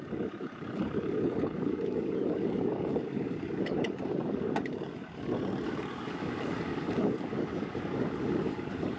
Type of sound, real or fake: fake